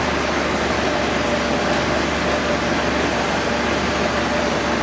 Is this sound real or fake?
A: real